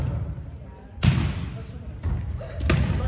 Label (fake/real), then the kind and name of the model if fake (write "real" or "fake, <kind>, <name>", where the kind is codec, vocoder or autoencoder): real